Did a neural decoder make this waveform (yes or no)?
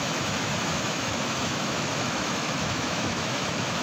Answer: yes